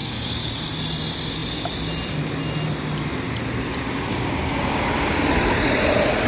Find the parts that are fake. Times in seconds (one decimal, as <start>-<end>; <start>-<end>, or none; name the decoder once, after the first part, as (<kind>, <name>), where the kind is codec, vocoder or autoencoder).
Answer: 0.0-0.5 (codec, DAC); 4.1-5.2